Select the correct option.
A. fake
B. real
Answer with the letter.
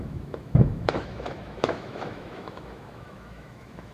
A